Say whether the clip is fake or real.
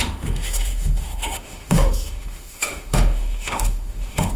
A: fake